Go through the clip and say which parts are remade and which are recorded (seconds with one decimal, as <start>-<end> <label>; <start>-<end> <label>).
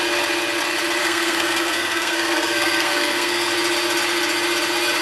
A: 0.0-1.0 recorded; 1.0-3.5 remade; 3.5-5.0 recorded